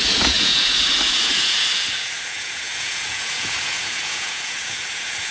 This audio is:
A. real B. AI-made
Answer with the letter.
B